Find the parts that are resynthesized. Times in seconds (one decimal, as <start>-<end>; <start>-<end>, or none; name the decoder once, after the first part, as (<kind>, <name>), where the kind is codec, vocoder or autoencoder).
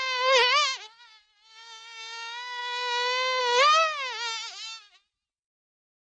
none